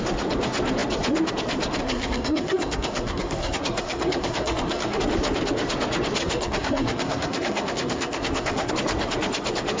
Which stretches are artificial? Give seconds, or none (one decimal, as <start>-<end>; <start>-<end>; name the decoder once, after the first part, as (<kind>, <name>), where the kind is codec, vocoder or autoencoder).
1.8-5.0 (codec, SNAC); 6.2-8.7